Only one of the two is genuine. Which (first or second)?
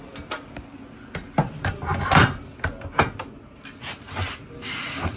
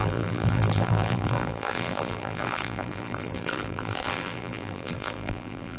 first